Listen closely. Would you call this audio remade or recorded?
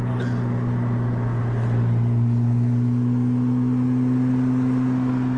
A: recorded